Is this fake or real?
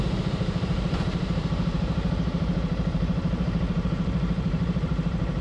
fake